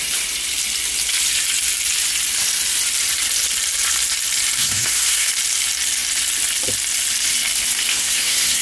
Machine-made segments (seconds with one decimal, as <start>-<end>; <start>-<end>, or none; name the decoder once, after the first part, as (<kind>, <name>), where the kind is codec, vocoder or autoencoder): 4.6-5.3 (codec, SNAC); 7.9-8.6